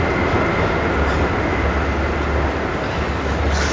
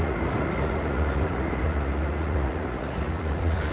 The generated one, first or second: second